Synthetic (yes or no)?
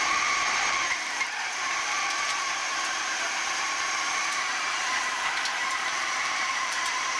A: yes